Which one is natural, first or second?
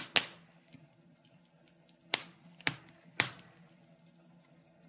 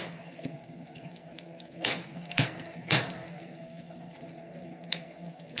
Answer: first